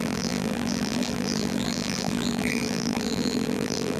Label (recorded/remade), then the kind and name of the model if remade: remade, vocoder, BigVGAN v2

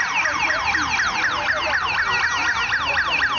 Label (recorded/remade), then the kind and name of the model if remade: recorded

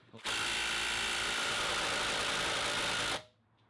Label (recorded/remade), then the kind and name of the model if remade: recorded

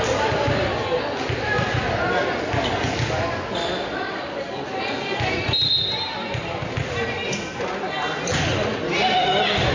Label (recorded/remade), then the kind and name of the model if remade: recorded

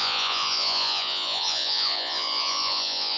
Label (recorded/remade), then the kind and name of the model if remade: remade, vocoder, Vocos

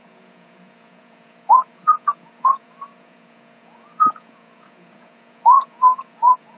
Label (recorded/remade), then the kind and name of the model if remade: remade, vocoder, Vocos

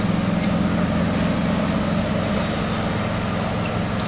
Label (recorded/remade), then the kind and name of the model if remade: recorded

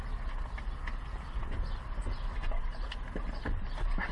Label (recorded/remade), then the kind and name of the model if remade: recorded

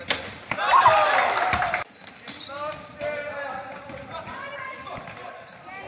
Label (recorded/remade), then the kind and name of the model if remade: recorded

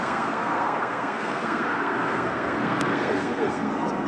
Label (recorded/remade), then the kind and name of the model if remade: remade, codec, SNAC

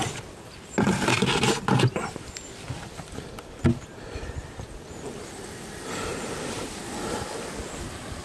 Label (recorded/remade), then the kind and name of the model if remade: recorded